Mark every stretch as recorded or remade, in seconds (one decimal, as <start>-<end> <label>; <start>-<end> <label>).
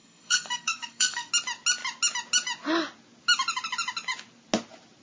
0.0-1.3 remade; 1.3-5.0 recorded